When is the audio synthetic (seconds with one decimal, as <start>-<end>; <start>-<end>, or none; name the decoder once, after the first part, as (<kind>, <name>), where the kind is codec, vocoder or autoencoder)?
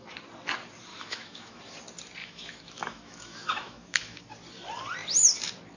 0.9-1.6 (autoencoder, DAC-VAE); 2.2-4.2